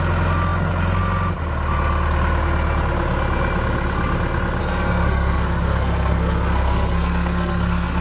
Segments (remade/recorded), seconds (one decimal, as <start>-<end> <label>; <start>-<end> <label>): 0.0-4.6 recorded; 4.6-8.0 remade